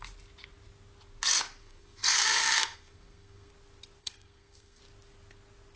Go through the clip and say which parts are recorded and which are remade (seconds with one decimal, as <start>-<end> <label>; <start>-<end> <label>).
0.0-1.6 recorded; 1.6-3.5 remade; 3.5-4.0 recorded; 4.0-4.8 remade; 4.8-5.8 recorded